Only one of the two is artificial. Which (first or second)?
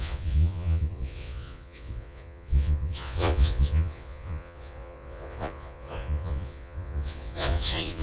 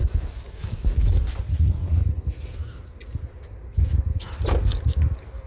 first